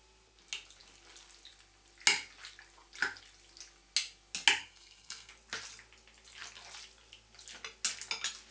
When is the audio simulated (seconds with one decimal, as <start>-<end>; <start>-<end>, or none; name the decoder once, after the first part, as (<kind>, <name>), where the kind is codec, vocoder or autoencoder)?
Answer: 4.6-5.3 (codec, SNAC)